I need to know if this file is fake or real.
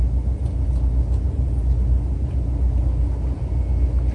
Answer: real